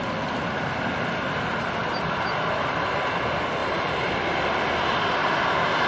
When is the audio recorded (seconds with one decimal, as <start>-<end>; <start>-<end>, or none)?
0.0-3.6; 4.2-5.2